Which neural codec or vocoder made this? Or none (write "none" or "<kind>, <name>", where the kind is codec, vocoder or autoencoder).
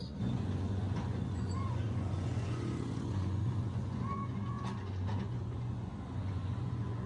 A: vocoder, Vocos